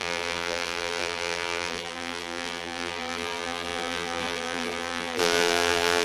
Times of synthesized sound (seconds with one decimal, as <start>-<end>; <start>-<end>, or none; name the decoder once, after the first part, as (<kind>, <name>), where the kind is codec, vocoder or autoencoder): 0.0-6.0 (vocoder, BigVGAN v2)